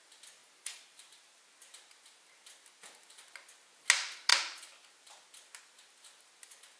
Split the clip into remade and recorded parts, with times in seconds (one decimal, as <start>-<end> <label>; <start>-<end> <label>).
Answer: 0.0-0.4 recorded; 0.4-1.4 remade; 1.4-6.8 recorded